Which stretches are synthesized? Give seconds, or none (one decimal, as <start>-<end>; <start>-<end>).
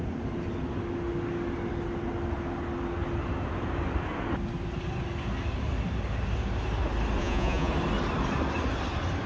7.2-7.7